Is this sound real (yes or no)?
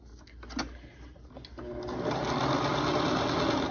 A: yes